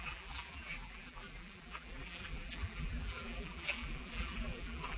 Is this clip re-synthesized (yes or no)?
yes